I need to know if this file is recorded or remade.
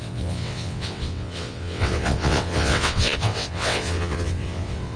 remade